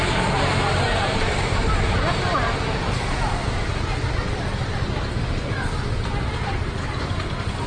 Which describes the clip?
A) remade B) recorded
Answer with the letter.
B